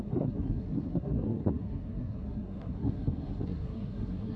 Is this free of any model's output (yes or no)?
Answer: no